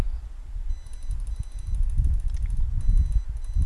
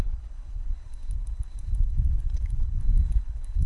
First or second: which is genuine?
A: first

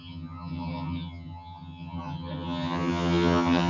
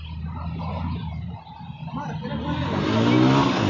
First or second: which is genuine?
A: second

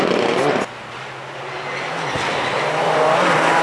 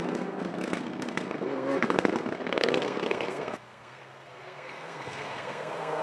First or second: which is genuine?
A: first